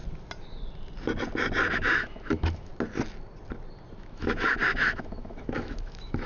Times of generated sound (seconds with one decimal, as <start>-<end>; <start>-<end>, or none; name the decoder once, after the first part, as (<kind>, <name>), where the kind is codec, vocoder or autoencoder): 1.7-2.7 (autoencoder, DAC-VAE); 4.0-6.3